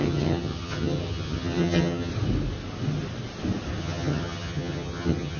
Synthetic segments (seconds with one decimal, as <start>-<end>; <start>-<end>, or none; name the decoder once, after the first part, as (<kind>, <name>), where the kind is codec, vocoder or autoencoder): 0.0-2.1 (vocoder, HiFi-GAN); 3.8-5.4